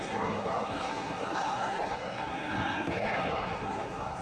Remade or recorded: remade